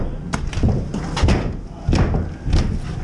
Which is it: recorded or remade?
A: recorded